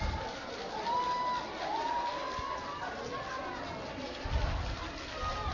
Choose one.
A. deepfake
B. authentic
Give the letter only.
B